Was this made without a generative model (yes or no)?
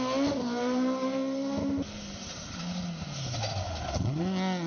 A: yes